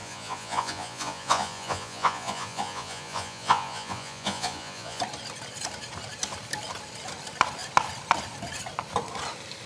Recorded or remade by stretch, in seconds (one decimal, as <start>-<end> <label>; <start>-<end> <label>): 0.0-5.0 remade; 5.0-9.7 recorded

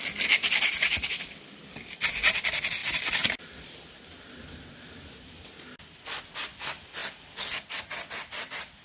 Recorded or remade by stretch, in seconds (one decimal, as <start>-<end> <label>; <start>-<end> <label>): 0.0-8.8 recorded

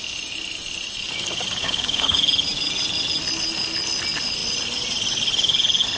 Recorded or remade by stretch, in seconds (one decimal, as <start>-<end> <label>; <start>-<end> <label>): 0.0-1.6 recorded; 1.6-2.2 remade; 2.2-6.0 recorded